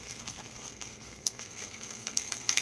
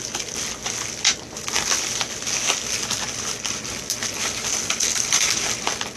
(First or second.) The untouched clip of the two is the second